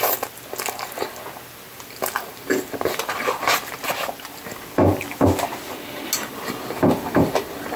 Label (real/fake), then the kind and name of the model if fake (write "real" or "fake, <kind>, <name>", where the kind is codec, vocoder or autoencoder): real